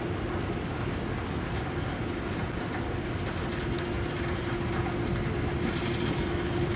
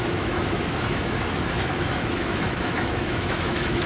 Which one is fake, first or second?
second